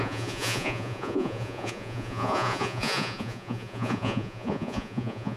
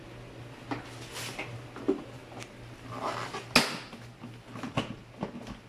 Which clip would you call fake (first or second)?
first